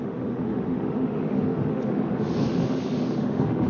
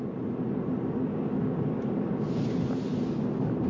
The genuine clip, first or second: second